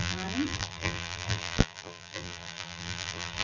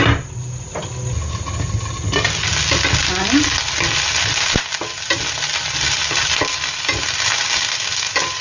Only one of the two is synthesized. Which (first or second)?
first